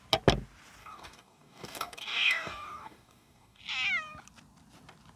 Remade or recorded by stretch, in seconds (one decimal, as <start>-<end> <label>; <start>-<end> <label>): 0.0-0.8 recorded; 0.8-3.6 remade; 3.6-5.2 recorded

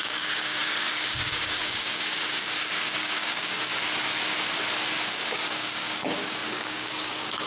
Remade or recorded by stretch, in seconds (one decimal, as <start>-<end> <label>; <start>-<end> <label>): 0.0-3.7 remade; 3.7-5.1 recorded; 5.1-7.5 remade

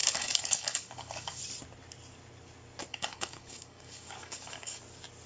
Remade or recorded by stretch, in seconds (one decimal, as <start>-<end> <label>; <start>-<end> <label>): 0.0-1.4 remade; 1.4-2.9 recorded; 2.9-4.8 remade; 4.8-5.3 recorded

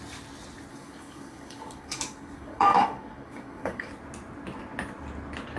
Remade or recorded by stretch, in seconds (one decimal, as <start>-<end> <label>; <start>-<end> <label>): 0.0-0.7 recorded; 0.7-3.9 remade; 3.9-5.6 recorded

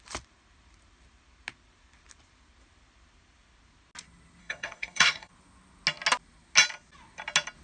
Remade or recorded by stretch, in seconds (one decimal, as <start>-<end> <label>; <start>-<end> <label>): 0.0-4.4 recorded; 4.4-5.3 remade; 5.3-7.6 recorded

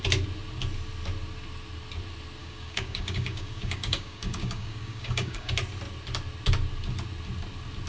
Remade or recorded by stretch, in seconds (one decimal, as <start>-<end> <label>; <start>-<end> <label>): 0.0-2.4 recorded; 2.4-5.5 remade; 5.5-7.9 recorded